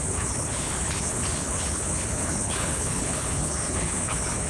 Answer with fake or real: fake